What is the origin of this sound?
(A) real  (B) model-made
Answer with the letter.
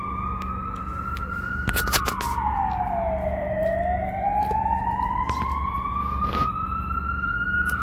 A